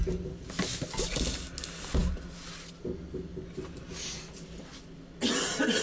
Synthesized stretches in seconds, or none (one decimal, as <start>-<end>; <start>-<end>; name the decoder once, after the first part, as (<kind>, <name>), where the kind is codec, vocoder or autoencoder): none